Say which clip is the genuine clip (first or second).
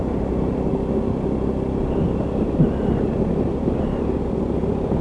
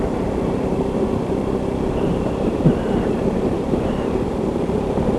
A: first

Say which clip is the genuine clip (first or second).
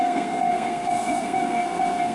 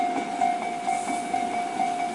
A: second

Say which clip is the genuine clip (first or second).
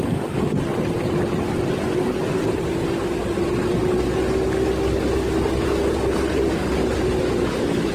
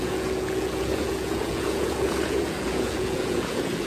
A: first